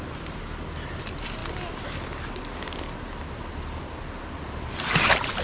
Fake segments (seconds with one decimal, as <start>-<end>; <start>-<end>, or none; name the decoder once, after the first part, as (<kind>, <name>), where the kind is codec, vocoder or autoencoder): none